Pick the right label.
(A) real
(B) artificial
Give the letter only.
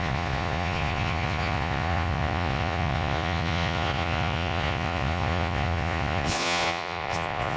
B